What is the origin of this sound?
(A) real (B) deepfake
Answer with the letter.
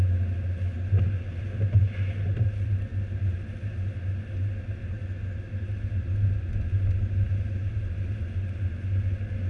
A